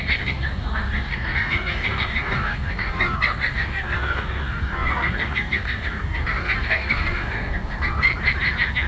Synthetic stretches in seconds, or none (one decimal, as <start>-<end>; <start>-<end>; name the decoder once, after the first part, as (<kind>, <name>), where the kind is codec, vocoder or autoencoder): 0.0-8.1 (codec, DAC)